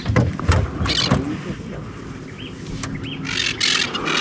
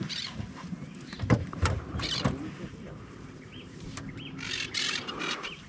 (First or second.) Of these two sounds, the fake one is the second